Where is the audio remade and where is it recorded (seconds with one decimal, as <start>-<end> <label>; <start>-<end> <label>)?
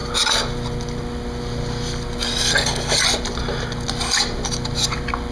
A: 0.0-5.3 recorded